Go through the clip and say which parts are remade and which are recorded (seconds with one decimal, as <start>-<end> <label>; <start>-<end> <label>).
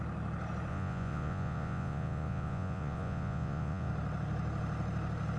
0.0-0.7 recorded; 0.7-3.9 remade; 3.9-5.4 recorded